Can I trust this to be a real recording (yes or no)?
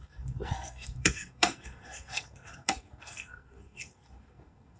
no